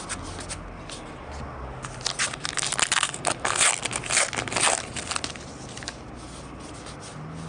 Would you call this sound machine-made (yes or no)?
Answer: no